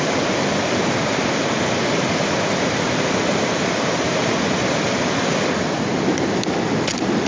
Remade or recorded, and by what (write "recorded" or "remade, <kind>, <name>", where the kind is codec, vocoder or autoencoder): recorded